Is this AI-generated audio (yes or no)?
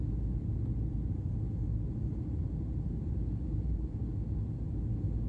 no